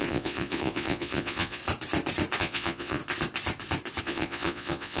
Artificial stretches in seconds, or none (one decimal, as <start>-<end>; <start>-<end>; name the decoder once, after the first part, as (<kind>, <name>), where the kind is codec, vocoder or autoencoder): 0.0-1.6 (vocoder, Vocos); 2.4-3.0; 4.0-5.0